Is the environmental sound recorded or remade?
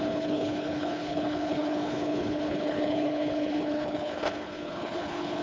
remade